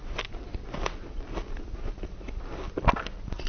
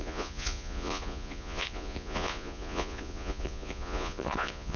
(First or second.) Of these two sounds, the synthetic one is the second